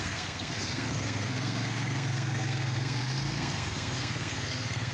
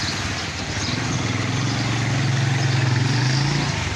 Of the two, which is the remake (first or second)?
first